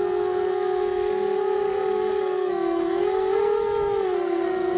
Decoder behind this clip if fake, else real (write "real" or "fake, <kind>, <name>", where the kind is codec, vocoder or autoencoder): fake, codec, SNAC